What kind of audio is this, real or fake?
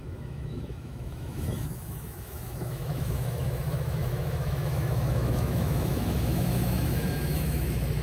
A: fake